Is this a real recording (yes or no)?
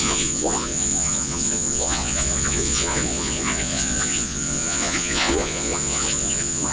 no